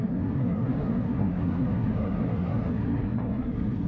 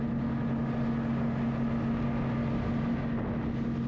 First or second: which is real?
second